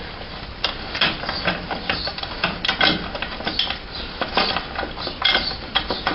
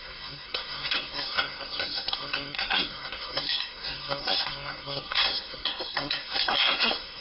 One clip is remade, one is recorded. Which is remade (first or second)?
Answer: second